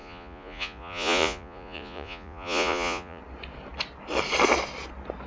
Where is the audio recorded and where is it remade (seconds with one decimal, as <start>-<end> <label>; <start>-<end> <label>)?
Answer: 0.0-3.2 remade; 3.2-5.3 recorded